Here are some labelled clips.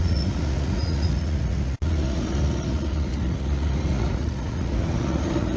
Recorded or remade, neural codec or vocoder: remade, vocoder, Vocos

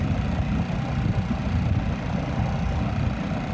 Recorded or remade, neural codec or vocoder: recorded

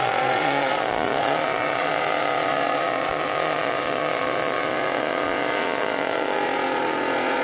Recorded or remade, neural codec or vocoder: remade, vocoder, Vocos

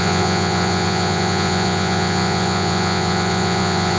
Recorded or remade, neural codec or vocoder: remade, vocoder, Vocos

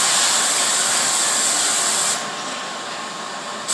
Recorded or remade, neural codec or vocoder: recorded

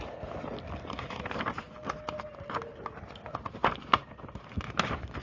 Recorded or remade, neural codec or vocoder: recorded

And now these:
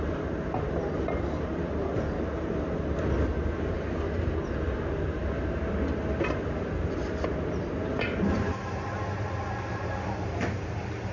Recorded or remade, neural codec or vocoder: recorded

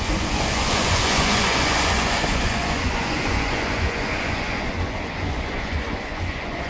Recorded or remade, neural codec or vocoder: remade, vocoder, Vocos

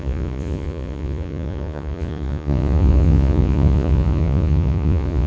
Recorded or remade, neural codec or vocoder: remade, vocoder, Vocos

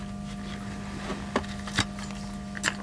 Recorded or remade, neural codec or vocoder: recorded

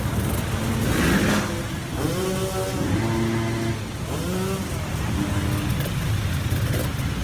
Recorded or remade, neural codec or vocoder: recorded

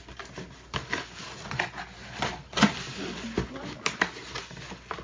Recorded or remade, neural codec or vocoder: recorded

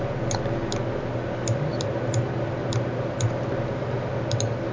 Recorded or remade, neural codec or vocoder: recorded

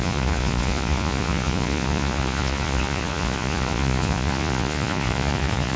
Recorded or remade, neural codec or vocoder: remade, vocoder, Vocos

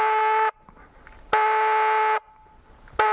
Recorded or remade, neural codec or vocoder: recorded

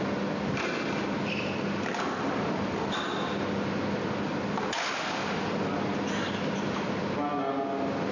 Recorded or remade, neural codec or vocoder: recorded